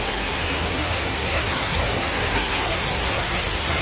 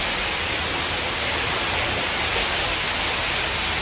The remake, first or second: first